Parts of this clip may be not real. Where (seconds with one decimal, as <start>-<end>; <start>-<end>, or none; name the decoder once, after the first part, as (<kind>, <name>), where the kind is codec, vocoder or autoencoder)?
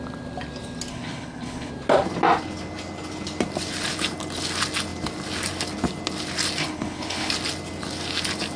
0.9-1.7 (codec, HILCodec); 6.6-7.3